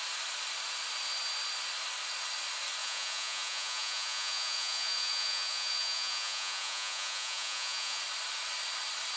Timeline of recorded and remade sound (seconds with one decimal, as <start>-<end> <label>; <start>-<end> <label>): 0.0-2.8 recorded; 2.8-8.0 remade; 8.0-9.2 recorded